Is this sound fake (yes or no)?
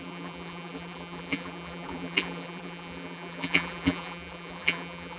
yes